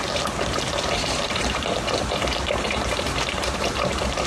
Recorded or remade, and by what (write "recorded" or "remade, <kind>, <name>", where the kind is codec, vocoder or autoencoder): recorded